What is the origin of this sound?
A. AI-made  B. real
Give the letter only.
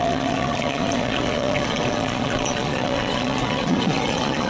A